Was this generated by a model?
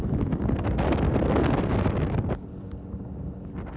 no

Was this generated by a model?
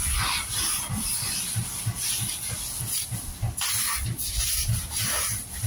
no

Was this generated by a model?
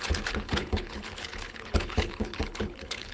yes